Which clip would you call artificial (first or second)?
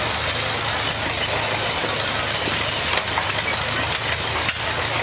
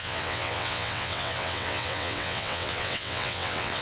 second